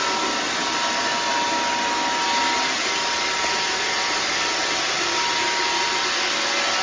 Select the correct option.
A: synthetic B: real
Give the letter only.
B